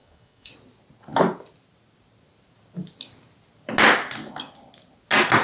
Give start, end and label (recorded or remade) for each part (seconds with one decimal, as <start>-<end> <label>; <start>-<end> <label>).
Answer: 0.0-0.5 remade; 0.5-5.4 recorded

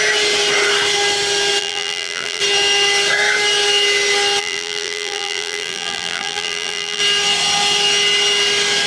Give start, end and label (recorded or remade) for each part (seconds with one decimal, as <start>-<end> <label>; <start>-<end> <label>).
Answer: 0.0-1.6 recorded; 1.6-2.4 remade; 2.4-4.4 recorded; 4.4-7.0 remade; 7.0-8.9 recorded

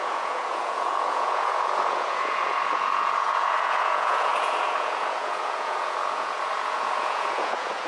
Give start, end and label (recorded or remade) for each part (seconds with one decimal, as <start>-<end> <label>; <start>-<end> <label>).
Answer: 0.0-7.9 remade

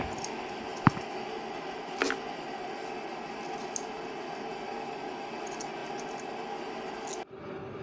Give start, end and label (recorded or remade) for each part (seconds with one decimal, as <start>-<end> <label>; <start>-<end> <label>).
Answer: 0.0-7.8 recorded

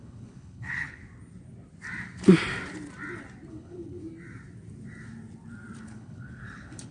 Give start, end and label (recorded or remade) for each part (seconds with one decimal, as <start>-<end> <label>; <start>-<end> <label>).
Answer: 0.0-1.0 remade; 1.0-3.5 recorded; 3.5-4.0 remade; 4.0-5.8 recorded; 5.8-6.9 remade

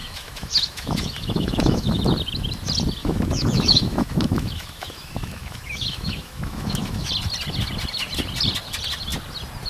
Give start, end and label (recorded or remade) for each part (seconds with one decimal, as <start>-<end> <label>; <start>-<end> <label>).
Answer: 0.0-2.0 remade; 2.0-3.0 recorded; 3.0-7.1 remade; 7.1-9.7 recorded